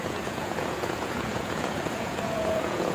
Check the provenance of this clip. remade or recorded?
remade